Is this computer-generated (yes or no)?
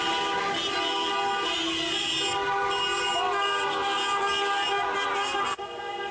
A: no